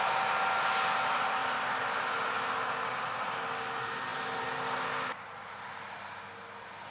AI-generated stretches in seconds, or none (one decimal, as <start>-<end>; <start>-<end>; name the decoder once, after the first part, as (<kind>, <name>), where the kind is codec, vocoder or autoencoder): none